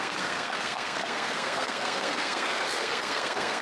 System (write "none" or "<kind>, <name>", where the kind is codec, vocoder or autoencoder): codec, SNAC